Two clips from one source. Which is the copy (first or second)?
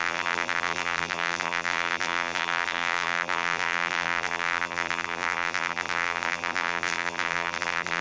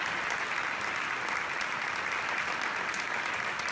first